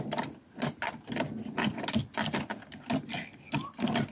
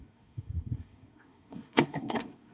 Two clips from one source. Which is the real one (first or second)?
first